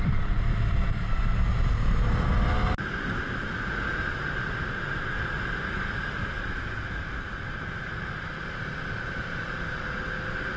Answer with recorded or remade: recorded